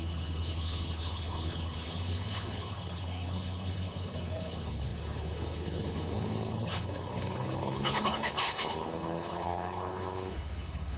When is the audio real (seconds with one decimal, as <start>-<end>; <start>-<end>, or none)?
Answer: none